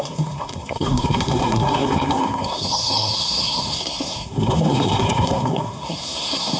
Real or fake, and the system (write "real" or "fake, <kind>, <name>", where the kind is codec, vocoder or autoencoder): fake, codec, SNAC